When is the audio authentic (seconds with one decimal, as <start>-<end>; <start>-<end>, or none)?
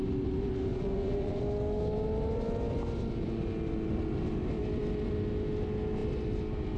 0.0-0.7; 1.4-6.8